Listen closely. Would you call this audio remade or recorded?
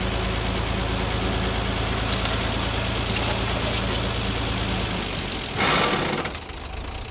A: recorded